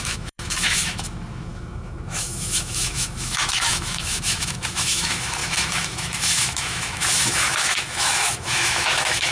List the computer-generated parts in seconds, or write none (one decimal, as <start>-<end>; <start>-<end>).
0.0-9.3